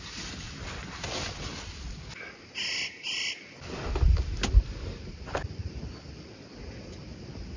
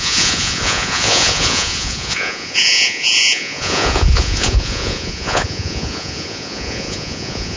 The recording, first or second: first